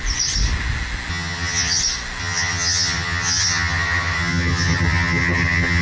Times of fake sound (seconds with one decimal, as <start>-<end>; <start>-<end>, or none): 1.1-1.8; 2.2-5.8